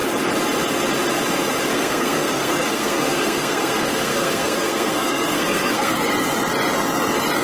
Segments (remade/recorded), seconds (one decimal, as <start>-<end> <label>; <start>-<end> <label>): 0.0-1.7 recorded; 1.7-6.1 remade; 6.1-7.4 recorded

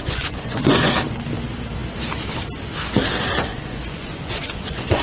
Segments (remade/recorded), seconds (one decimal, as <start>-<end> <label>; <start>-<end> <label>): 0.0-0.9 remade; 0.9-3.5 recorded; 3.5-5.0 remade